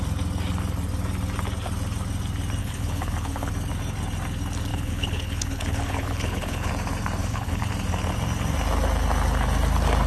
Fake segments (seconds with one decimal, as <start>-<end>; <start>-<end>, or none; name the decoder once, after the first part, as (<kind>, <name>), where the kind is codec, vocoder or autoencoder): 2.6-3.5 (codec, HILCodec); 4.7-6.7; 7.2-7.7